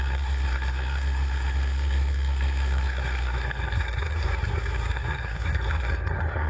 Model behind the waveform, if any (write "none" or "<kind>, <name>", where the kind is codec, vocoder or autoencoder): codec, SNAC